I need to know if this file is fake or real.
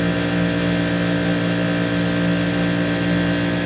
real